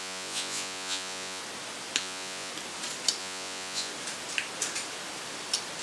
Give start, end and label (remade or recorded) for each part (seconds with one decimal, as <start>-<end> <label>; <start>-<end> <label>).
0.0-1.4 remade; 1.4-2.0 recorded; 2.0-2.5 remade; 2.5-3.2 recorded; 3.2-3.9 remade; 3.9-5.8 recorded